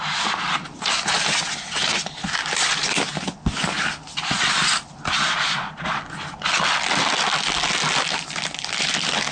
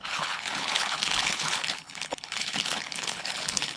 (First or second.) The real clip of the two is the first